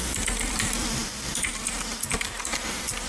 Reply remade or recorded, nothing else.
remade